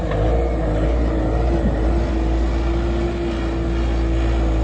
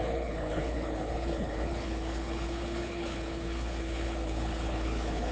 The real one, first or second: first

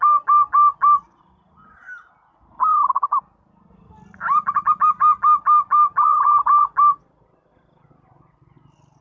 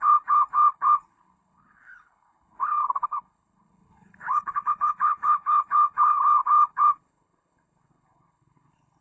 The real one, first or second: first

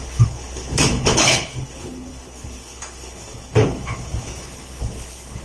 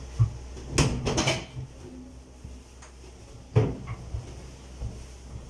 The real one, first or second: second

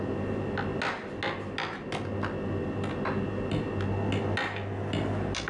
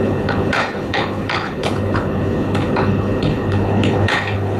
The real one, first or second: first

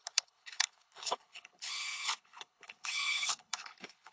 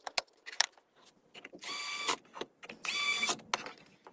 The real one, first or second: second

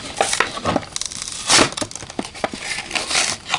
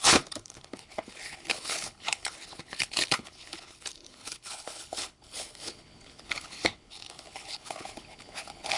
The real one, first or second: first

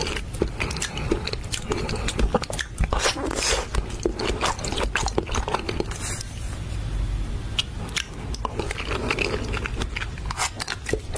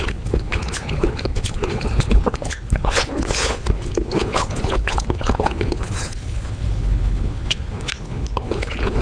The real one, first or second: first